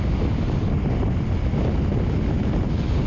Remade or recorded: recorded